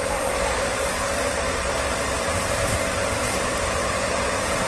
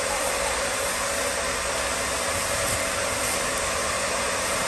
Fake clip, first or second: first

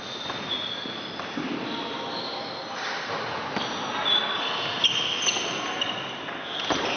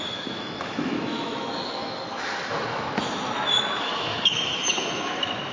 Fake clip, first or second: second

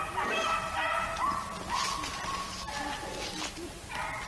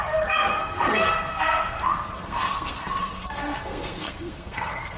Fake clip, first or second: second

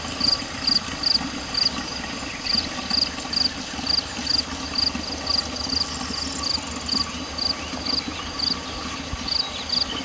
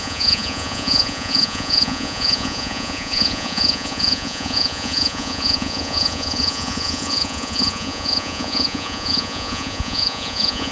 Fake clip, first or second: second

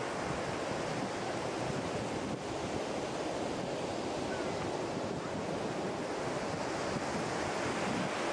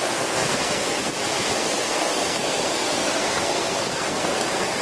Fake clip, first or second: second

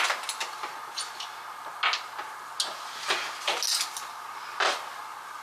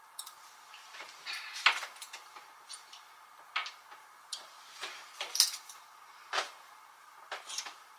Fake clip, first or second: second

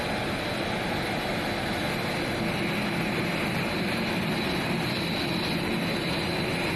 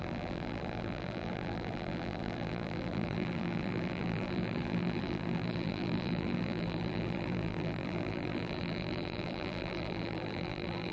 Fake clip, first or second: second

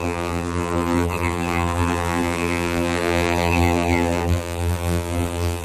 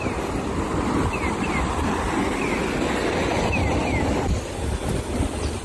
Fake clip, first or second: first